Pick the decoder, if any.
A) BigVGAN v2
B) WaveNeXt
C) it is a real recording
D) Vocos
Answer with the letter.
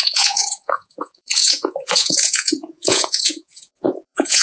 D